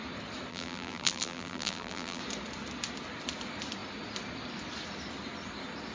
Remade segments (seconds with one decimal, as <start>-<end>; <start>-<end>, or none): 0.5-2.2